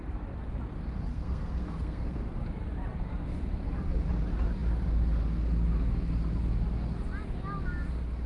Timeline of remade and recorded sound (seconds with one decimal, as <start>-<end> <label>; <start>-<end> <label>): 0.0-1.1 recorded; 1.1-2.2 remade; 2.2-8.3 recorded